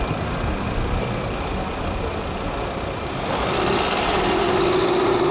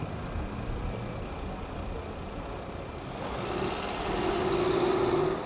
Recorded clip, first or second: second